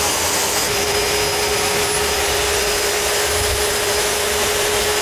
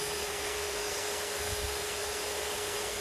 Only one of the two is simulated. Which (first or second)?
second